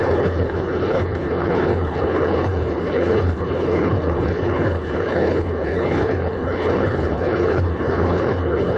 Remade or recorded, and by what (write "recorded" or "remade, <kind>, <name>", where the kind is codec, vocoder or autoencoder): remade, codec, HILCodec